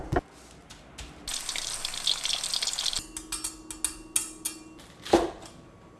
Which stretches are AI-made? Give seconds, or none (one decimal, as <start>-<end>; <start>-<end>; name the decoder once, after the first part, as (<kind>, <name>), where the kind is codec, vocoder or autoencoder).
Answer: none